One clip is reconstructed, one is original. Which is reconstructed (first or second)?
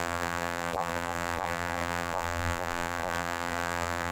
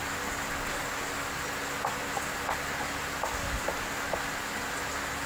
first